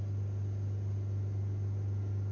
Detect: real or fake real